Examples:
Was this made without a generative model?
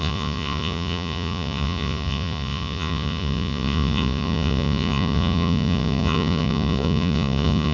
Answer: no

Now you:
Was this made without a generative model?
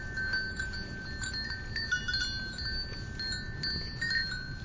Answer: yes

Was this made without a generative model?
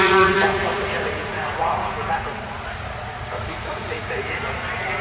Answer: no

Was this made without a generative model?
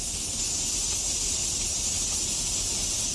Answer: yes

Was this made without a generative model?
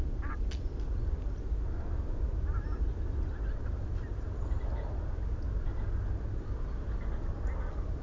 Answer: yes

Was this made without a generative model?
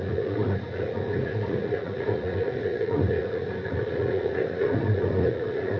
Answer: no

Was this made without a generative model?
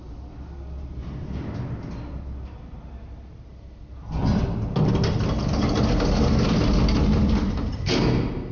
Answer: yes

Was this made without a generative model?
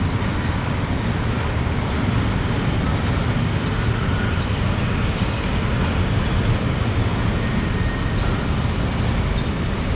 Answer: yes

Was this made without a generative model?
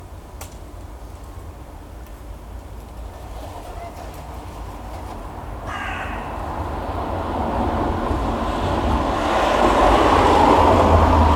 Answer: yes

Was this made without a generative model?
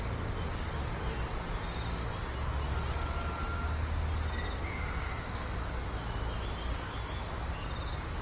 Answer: yes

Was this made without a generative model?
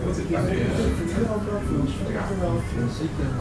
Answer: yes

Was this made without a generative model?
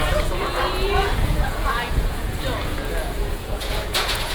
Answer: no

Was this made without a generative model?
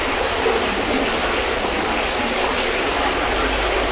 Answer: yes